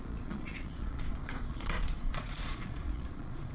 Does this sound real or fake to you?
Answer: fake